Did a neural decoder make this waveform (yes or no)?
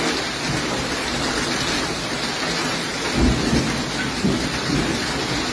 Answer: no